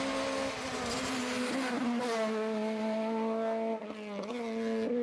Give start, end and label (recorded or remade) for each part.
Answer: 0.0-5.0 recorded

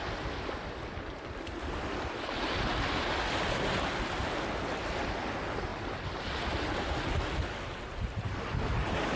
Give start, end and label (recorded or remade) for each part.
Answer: 0.0-9.2 recorded